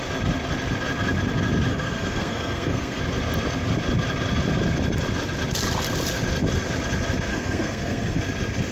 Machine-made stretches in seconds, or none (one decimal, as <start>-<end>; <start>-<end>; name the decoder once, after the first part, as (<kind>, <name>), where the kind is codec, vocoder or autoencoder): 1.7-3.0 (codec, SNAC); 7.3-8.2